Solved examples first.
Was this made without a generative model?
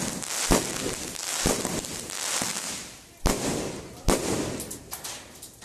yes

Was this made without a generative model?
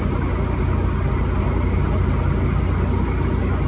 yes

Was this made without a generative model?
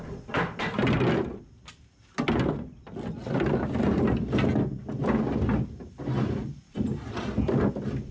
yes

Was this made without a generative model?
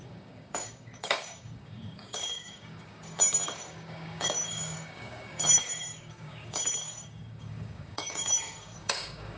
no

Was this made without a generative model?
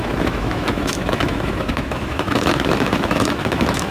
no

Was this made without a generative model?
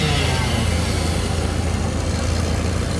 yes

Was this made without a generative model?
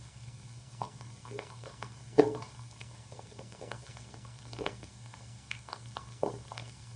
no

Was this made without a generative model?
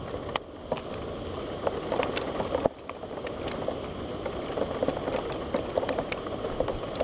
yes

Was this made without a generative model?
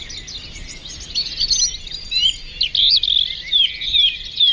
yes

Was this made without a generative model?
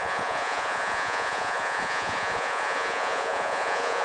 no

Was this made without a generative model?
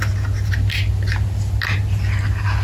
yes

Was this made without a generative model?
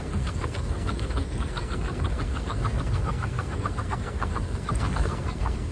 no